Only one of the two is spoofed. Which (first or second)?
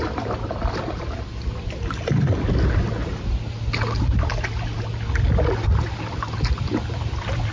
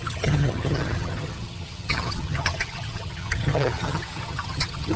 second